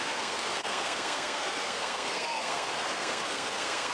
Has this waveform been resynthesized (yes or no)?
yes